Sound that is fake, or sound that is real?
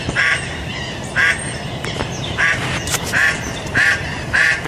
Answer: fake